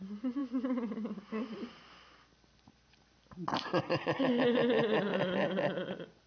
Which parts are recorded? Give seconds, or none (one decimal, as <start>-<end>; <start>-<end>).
0.0-6.3